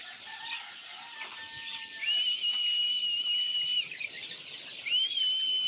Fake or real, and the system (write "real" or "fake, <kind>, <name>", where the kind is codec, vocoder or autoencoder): real